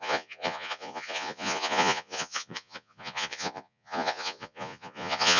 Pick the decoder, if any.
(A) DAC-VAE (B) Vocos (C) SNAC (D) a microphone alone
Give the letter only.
B